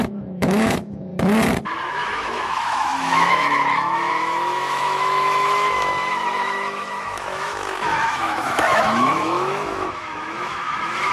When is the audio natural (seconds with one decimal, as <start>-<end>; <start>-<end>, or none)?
1.1-1.9